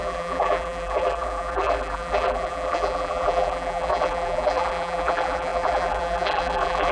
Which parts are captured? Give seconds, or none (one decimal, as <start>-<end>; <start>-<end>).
none